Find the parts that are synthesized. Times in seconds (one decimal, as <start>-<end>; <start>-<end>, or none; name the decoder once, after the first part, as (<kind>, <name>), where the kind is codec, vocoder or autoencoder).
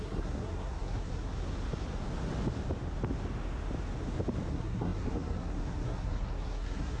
0.0-1.3 (codec, SNAC); 4.5-7.0